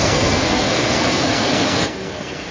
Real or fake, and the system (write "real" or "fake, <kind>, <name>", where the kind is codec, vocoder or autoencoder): fake, codec, SNAC